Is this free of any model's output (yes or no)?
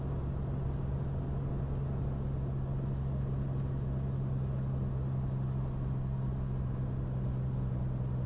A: yes